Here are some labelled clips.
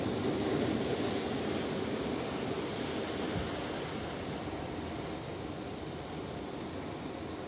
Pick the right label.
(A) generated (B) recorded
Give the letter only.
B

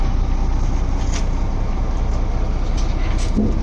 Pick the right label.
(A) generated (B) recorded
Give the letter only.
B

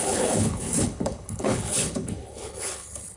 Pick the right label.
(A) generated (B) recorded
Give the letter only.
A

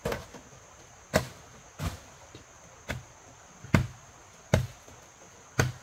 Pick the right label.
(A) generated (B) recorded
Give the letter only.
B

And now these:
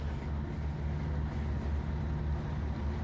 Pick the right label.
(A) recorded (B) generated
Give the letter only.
A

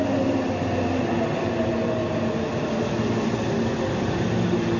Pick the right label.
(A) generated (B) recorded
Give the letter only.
B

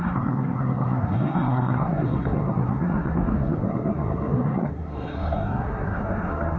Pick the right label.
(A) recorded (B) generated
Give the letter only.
B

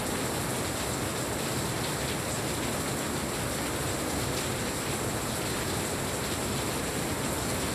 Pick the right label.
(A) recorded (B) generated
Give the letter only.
A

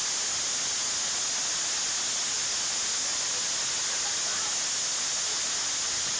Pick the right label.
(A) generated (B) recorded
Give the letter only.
B